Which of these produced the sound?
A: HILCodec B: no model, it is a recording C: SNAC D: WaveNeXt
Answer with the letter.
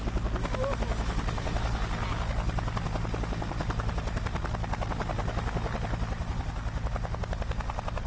B